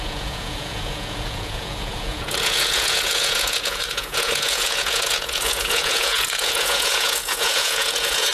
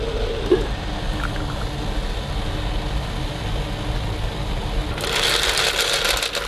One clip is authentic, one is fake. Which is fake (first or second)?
first